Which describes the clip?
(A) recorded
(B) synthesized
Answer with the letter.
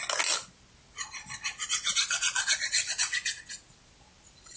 A